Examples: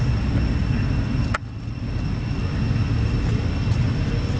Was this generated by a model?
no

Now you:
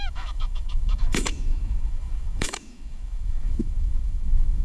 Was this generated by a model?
yes